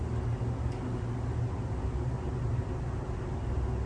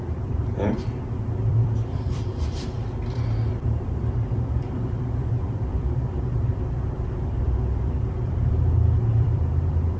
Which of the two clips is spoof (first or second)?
second